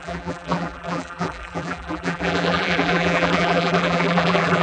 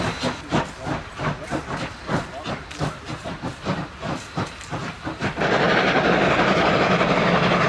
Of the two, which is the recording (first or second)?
second